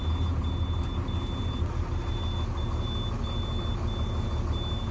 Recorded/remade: recorded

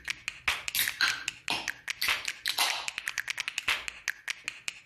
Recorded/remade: recorded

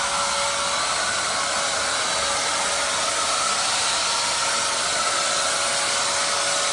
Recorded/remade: recorded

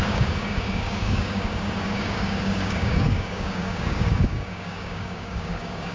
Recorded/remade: remade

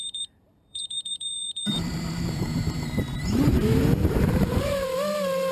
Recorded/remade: remade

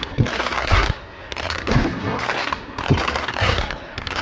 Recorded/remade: remade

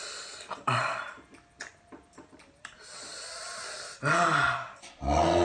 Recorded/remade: recorded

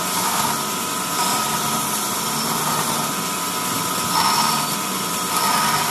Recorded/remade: recorded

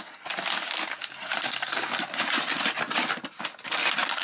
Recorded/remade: recorded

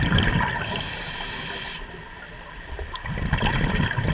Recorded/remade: recorded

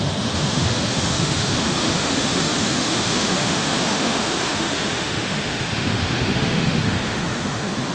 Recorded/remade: remade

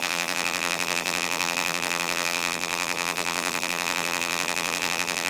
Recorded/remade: remade